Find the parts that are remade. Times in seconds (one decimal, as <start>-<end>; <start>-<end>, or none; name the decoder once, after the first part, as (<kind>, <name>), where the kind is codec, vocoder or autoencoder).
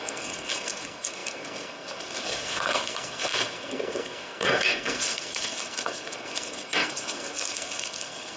0.0-8.4 (codec, SNAC)